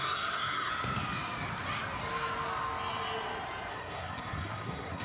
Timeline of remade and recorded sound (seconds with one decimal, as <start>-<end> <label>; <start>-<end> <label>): 0.0-0.7 remade; 0.7-3.7 recorded; 3.7-5.0 remade